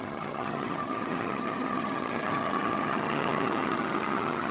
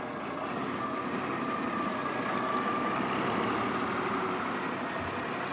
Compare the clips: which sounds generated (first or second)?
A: first